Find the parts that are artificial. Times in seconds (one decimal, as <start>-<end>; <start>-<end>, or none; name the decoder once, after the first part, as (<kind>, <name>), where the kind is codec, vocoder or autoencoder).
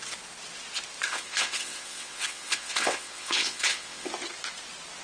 1.1-4.1 (vocoder, WaveNeXt)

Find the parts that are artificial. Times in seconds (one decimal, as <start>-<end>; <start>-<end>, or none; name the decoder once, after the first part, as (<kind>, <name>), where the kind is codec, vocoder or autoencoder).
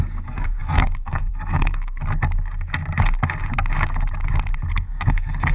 0.0-2.0 (codec, SNAC); 4.7-5.5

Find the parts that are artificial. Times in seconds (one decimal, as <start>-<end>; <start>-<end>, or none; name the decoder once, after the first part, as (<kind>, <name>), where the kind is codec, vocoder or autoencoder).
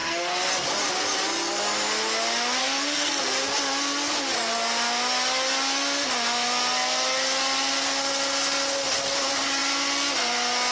0.0-0.5 (codec, SNAC); 2.6-3.2